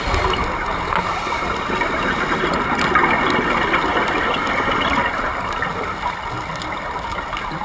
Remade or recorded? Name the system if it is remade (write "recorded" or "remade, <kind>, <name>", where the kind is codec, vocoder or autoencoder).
recorded